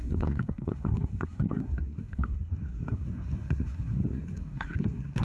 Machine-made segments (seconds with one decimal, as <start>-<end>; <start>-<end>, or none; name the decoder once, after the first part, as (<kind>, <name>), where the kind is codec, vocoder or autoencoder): 0.0-5.2 (codec, SNAC)

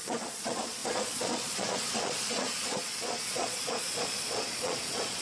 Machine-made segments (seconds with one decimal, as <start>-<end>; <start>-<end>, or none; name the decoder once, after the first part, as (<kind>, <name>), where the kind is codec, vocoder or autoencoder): 0.0-5.2 (vocoder, Vocos)

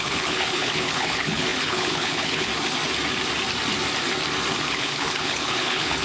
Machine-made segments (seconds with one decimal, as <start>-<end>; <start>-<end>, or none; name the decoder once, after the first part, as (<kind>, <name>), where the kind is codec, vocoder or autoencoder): 0.0-2.5 (codec, HILCodec); 4.6-6.0

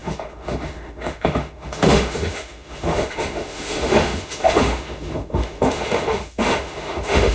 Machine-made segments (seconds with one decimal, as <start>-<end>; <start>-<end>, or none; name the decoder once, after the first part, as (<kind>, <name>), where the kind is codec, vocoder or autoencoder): 0.0-7.3 (autoencoder, DAC-VAE)

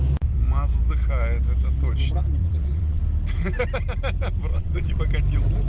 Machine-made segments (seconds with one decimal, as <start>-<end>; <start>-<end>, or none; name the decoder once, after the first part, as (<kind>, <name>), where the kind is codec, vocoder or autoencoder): 2.4-3.0 (vocoder, Vocos); 4.5-5.0

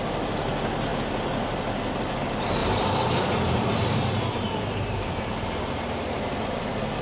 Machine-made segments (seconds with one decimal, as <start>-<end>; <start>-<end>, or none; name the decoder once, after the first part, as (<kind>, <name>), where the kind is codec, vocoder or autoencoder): 2.6-6.4 (vocoder, BigVGAN v2)

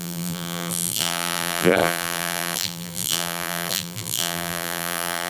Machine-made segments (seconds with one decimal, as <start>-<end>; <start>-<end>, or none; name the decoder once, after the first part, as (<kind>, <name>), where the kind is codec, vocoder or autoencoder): 0.0-5.3 (vocoder, BigVGAN v2)

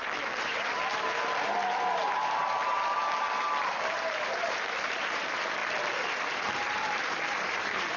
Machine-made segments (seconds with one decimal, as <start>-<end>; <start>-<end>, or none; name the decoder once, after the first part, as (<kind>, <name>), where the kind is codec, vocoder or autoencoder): 0.0-5.6 (vocoder, BigVGAN v2); 6.1-8.0